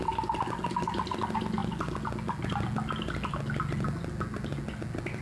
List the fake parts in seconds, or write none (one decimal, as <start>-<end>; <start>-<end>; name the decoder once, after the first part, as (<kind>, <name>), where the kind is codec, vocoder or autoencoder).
none

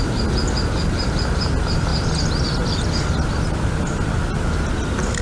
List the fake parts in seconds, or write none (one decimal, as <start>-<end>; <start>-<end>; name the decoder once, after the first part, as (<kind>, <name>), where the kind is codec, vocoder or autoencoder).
none

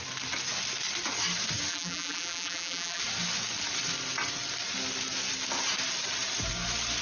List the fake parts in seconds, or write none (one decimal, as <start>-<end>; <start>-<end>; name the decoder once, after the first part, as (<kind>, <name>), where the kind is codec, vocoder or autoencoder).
1.7-3.0 (vocoder, BigVGAN v2)

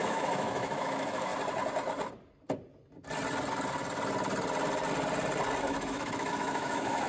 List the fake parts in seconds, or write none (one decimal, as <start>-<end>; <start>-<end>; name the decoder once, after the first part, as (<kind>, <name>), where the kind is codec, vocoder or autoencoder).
0.0-1.3 (autoencoder, DAC-VAE); 5.6-7.1